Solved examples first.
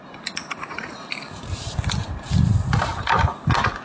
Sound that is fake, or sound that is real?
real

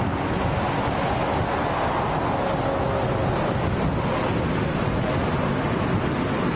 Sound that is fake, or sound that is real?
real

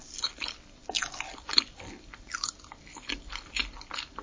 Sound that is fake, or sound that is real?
real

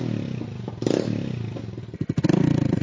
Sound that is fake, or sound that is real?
real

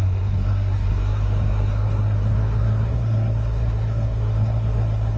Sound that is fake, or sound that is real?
fake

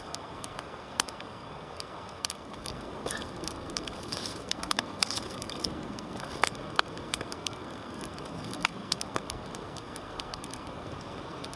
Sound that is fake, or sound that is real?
fake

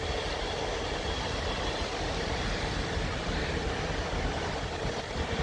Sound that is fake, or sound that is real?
real